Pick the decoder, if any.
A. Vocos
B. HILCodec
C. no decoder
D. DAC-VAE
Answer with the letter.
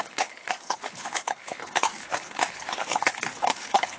B